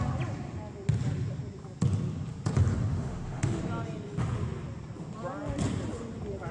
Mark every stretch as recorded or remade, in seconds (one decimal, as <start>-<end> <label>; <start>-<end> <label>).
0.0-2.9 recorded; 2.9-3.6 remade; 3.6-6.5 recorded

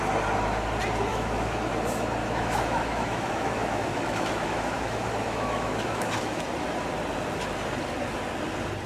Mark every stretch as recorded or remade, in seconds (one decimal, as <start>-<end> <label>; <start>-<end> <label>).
0.0-1.1 recorded; 1.1-1.7 remade; 1.7-2.2 recorded; 2.2-6.4 remade; 6.4-8.9 recorded

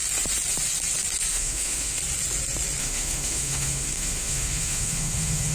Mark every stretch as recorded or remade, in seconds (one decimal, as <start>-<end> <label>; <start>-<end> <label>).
0.0-1.3 recorded; 1.3-2.0 remade; 2.0-2.8 recorded; 2.8-5.5 remade

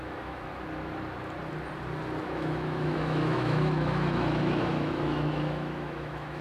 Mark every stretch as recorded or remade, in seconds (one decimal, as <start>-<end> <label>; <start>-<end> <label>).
0.0-0.5 remade; 0.5-2.2 recorded; 2.2-6.4 remade

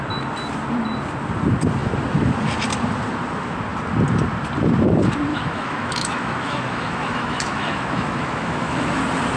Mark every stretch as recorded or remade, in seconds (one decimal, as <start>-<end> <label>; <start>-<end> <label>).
0.0-5.3 recorded; 5.3-9.0 remade; 9.0-9.4 recorded

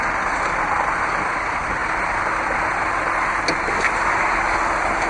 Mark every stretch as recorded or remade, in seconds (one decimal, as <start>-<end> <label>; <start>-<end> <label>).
0.0-5.1 recorded